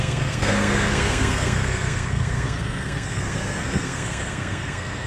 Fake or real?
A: fake